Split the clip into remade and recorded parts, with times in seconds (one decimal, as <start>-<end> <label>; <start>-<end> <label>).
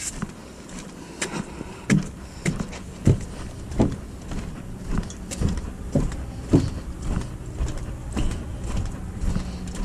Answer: 0.0-0.4 recorded; 0.4-1.0 remade; 1.0-3.0 recorded; 3.0-7.0 remade; 7.0-8.5 recorded; 8.5-9.4 remade; 9.4-9.8 recorded